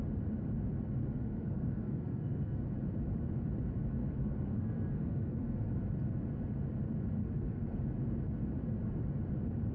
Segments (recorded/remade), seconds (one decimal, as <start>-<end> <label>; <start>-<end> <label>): 0.0-1.0 recorded; 1.0-2.6 remade; 2.6-4.0 recorded; 4.0-5.7 remade; 5.7-7.2 recorded; 7.2-7.8 remade; 7.8-9.7 recorded